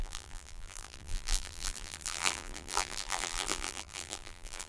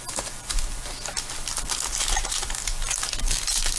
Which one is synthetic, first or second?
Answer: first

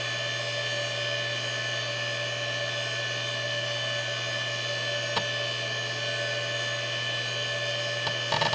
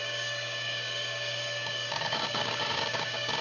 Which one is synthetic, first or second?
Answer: second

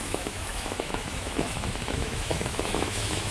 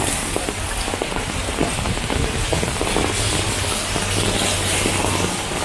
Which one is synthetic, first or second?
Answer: first